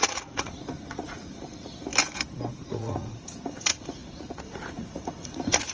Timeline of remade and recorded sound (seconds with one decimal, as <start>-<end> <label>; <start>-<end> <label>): 0.0-1.9 remade; 1.9-2.5 recorded; 2.5-5.7 remade